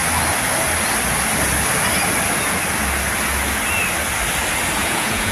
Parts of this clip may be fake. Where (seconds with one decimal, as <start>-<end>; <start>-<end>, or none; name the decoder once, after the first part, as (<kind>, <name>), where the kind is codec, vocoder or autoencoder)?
4.8-5.3 (vocoder, Vocos)

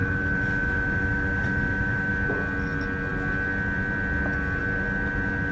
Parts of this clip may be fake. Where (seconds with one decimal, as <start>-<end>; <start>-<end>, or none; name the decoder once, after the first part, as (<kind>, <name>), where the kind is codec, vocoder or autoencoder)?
0.0-2.1 (autoencoder, DAC-VAE)

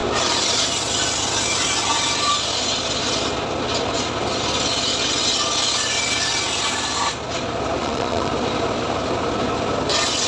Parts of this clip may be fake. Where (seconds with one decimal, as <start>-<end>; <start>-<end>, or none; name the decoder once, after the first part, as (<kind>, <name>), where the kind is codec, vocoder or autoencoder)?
7.8-8.3 (vocoder, Vocos)

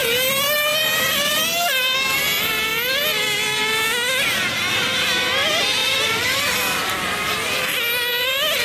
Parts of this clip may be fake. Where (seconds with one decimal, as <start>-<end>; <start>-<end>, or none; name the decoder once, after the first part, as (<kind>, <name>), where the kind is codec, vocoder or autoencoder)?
0.0-2.2 (vocoder, BigVGAN v2); 5.8-7.0

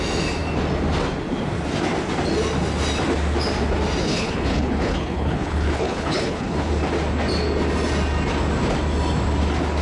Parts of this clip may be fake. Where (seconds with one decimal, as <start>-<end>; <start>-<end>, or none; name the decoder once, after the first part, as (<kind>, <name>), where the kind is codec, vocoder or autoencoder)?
4.0-6.7 (codec, HILCodec)

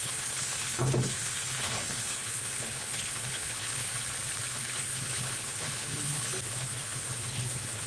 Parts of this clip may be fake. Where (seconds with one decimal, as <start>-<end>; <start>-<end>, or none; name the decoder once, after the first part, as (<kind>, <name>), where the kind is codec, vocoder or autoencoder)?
0.0-3.9 (codec, HILCodec); 4.5-7.9

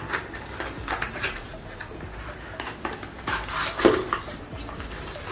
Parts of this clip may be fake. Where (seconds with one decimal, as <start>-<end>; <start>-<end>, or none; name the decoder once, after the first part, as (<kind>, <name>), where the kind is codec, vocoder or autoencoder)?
0.0-1.5 (vocoder, BigVGAN v2); 3.9-5.3